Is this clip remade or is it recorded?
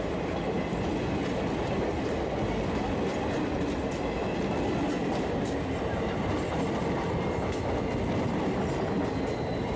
recorded